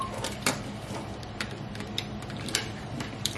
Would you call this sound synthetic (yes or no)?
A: yes